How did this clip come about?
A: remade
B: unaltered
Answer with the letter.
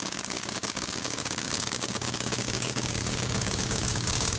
A